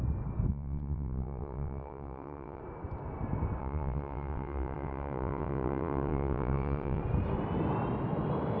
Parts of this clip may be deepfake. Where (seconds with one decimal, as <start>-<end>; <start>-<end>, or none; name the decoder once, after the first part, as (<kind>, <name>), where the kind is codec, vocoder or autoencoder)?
0.5-2.6 (vocoder, WaveNeXt); 3.6-7.0